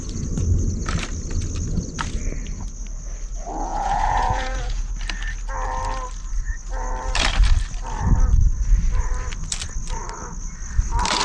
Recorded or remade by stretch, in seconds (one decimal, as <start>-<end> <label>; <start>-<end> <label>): 0.0-3.7 recorded; 3.7-4.9 remade; 4.9-11.2 recorded